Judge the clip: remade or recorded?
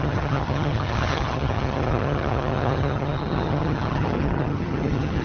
remade